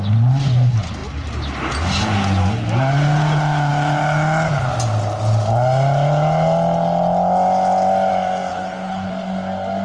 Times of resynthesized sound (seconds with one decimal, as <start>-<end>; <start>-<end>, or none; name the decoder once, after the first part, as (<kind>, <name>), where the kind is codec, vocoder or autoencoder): 8.5-9.1 (codec, HILCodec)